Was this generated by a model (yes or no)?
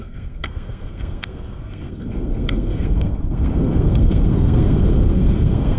yes